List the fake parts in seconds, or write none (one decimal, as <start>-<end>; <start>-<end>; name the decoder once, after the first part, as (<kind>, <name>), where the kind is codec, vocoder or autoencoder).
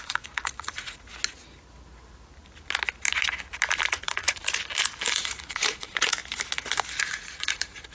0.0-1.1 (vocoder, Vocos); 3.9-4.4; 5.1-6.2; 7.0-7.9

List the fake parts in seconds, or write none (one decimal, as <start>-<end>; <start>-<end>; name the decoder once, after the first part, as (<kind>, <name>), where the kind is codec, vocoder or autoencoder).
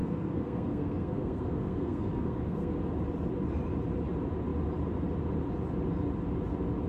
0.0-2.7 (codec, SNAC)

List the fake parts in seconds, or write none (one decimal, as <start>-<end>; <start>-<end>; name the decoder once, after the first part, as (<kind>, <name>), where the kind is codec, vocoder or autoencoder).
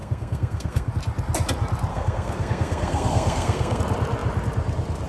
0.0-0.9 (codec, SNAC); 1.9-3.8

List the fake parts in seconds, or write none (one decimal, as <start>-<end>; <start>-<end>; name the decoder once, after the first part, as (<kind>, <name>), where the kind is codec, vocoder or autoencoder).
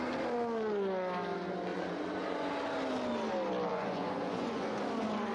1.7-2.5 (vocoder, Vocos); 3.7-4.8